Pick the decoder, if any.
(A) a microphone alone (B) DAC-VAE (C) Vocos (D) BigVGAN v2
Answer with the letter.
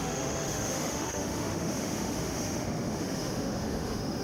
B